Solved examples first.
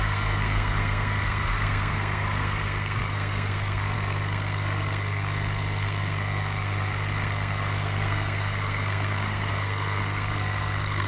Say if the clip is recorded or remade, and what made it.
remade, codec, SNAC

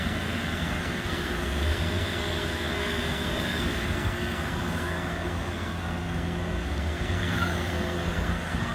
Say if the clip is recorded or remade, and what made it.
remade, codec, SNAC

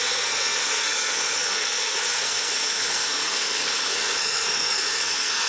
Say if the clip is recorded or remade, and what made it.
remade, codec, SNAC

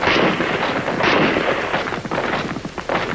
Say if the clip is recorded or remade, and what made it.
recorded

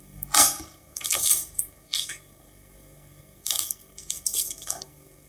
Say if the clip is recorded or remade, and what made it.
remade, codec, SNAC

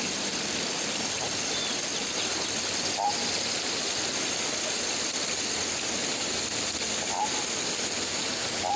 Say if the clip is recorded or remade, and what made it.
recorded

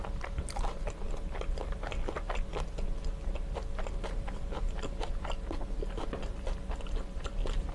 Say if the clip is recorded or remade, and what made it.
recorded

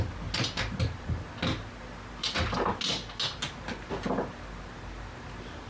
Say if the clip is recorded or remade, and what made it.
recorded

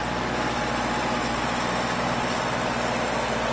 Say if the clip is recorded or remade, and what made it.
recorded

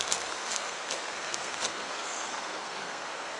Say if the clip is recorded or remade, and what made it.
remade, codec, SNAC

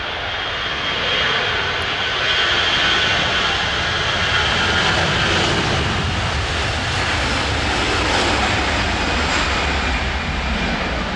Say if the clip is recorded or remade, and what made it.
recorded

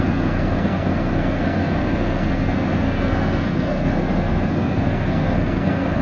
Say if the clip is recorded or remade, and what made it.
remade, codec, SNAC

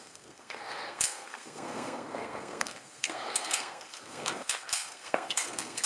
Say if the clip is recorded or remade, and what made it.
remade, codec, SNAC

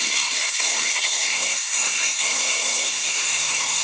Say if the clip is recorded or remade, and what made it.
remade, codec, SNAC